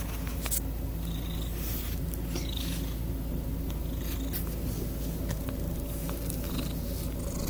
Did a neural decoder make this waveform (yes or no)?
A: no